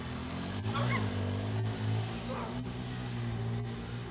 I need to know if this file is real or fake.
real